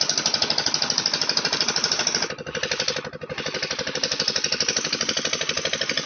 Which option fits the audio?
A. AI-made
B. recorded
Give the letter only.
A